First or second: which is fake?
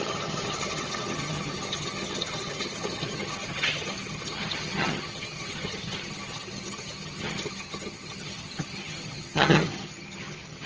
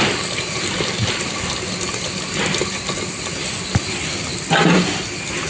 first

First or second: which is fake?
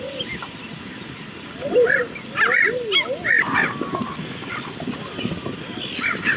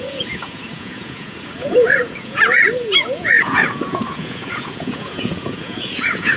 second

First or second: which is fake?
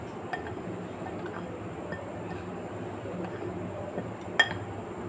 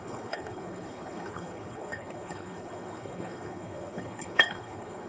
second